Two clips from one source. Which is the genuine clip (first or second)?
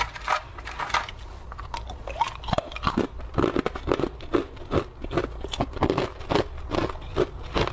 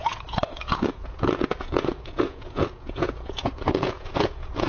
first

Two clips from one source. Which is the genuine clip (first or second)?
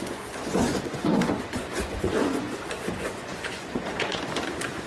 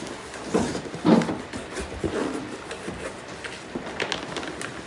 second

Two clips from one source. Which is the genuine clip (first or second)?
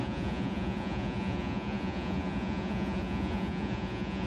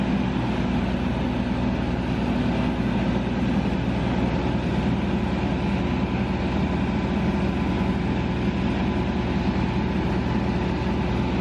second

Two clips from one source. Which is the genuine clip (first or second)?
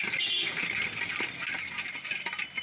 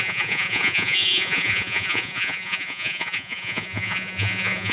first